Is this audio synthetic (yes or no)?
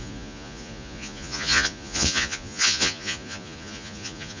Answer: yes